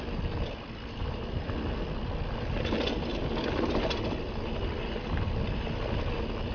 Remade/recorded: recorded